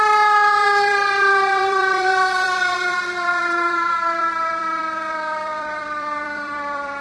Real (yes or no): no